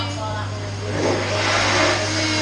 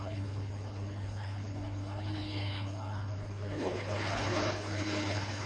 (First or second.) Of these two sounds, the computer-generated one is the second